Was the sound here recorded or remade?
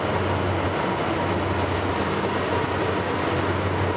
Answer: recorded